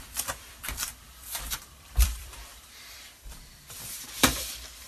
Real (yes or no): no